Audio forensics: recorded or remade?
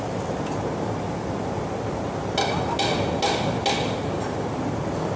recorded